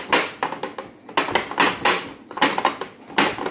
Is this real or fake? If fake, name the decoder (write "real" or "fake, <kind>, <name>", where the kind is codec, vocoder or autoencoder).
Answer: real